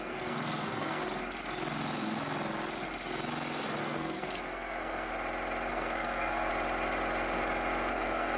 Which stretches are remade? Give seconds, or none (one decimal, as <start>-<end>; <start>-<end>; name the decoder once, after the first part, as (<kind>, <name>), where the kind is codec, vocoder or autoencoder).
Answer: 0.0-1.0 (codec, SNAC); 3.8-5.1; 5.7-6.5; 7.9-8.4